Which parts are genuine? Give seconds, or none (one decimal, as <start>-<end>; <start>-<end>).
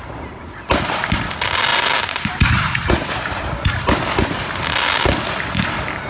0.0-6.1